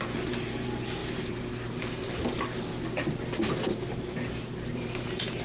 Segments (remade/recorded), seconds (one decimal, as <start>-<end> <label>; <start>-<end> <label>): 0.0-2.7 remade; 2.7-3.9 recorded; 3.9-5.4 remade